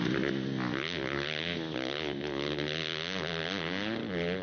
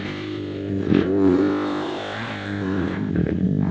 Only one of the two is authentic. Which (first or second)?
first